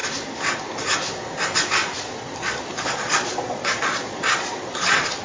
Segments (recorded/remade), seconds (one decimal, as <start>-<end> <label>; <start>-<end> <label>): 0.0-1.8 recorded; 1.8-5.2 remade